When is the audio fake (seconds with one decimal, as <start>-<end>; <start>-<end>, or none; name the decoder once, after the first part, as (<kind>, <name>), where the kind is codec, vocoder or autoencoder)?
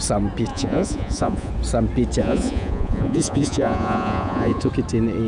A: 0.5-1.5 (vocoder, Vocos); 2.2-4.7